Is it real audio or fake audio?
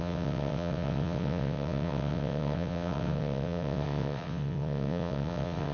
fake